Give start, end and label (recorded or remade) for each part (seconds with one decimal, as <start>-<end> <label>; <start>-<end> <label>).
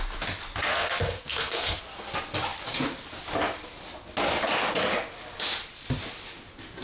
0.0-0.7 recorded; 0.7-1.8 remade; 1.8-6.8 recorded